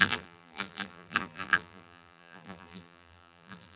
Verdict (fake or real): fake